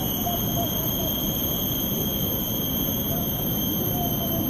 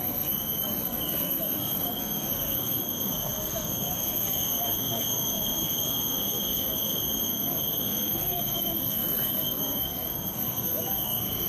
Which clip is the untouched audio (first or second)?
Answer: first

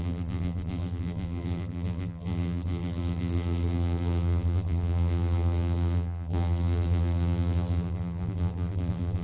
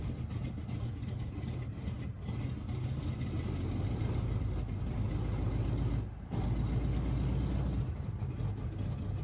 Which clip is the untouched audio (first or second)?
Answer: second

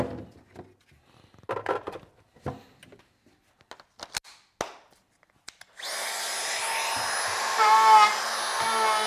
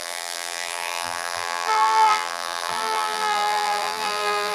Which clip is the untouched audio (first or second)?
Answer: first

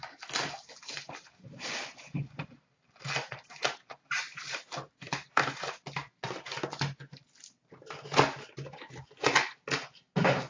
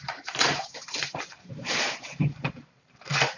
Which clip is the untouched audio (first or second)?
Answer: first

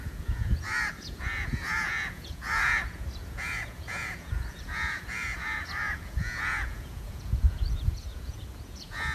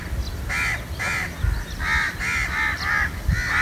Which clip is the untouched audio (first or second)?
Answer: second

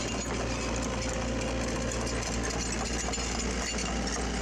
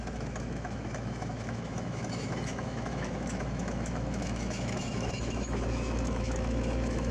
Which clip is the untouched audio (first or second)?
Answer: first